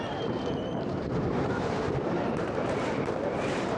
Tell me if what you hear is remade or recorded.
remade